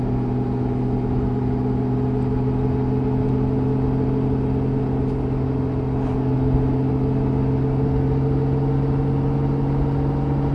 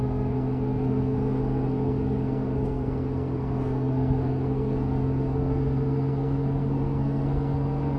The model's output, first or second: second